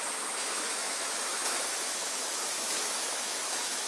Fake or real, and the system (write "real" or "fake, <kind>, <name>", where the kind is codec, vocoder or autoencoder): fake, autoencoder, DAC-VAE